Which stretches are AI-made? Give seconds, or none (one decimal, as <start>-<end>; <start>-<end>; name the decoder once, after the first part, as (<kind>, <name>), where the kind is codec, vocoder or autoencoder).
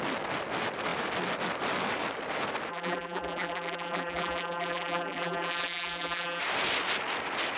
2.7-6.4 (vocoder, BigVGAN v2)